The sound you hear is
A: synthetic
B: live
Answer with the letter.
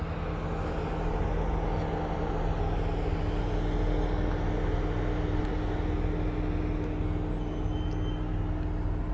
B